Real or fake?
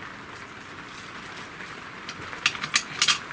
real